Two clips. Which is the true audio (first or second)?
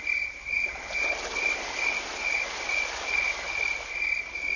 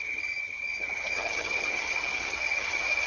first